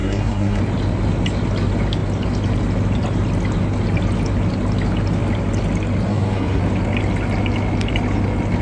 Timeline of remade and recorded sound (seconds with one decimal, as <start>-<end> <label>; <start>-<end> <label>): 0.0-0.6 remade; 0.6-6.1 recorded; 6.1-6.6 remade; 6.6-8.6 recorded